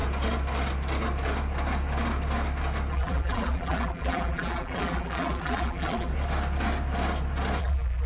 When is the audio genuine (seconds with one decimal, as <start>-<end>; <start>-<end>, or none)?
0.0-2.9; 6.1-7.6